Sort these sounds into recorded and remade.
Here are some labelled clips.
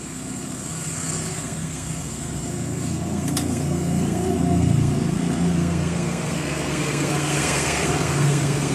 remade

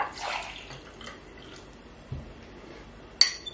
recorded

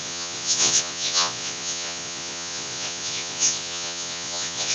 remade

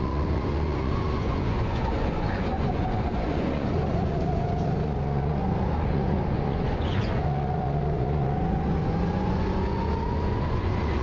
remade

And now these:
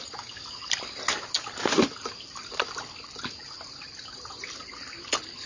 recorded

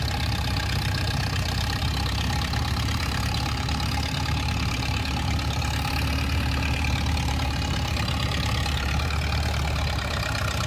remade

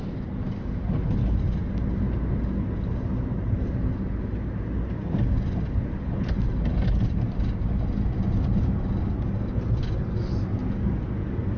recorded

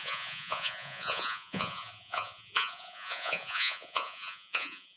remade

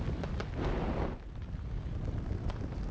recorded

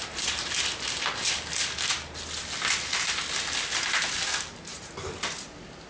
recorded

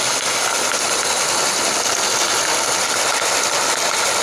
recorded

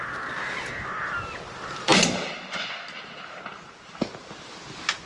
recorded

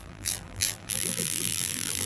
remade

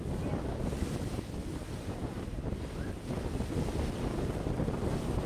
recorded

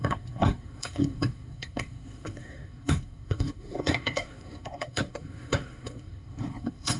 remade